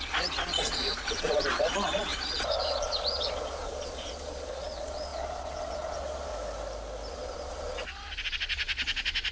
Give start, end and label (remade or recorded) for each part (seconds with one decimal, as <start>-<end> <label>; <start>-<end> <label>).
0.0-6.3 remade; 6.3-7.1 recorded; 7.1-9.3 remade